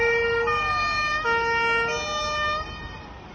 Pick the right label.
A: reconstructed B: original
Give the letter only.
B